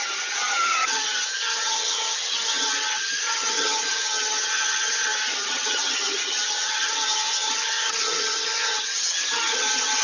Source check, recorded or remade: remade